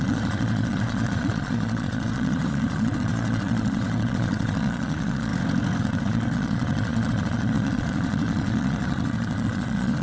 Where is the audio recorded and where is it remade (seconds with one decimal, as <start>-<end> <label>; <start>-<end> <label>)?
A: 0.0-5.3 remade; 5.3-5.8 recorded; 5.8-10.0 remade